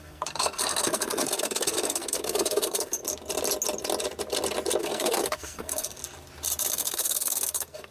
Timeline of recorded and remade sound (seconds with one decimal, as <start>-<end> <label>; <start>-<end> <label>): 0.0-3.0 remade; 3.0-4.8 recorded; 4.8-6.0 remade; 6.0-6.7 recorded; 6.7-7.9 remade